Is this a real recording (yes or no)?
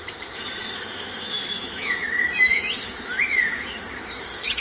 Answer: no